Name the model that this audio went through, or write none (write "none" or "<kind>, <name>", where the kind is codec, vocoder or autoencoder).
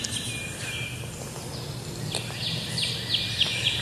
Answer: none